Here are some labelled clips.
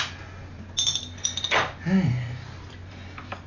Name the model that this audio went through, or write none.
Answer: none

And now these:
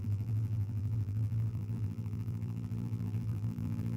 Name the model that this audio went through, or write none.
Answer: vocoder, BigVGAN v2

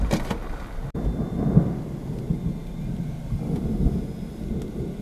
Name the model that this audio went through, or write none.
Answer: none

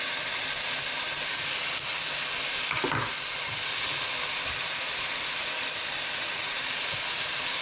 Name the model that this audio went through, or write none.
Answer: none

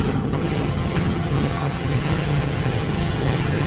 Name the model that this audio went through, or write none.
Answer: vocoder, HiFi-GAN